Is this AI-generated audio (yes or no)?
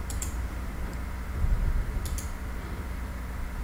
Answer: yes